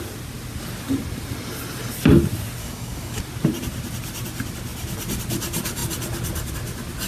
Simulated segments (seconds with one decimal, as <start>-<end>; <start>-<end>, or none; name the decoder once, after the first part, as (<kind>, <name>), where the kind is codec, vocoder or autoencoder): 2.6-3.2 (codec, DAC)